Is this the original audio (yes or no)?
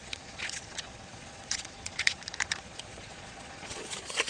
no